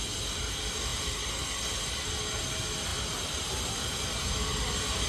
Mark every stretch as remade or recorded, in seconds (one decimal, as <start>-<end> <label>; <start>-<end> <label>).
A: 0.0-2.9 recorded; 2.9-3.5 remade; 3.5-5.1 recorded